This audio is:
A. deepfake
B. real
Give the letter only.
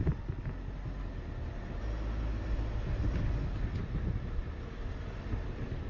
B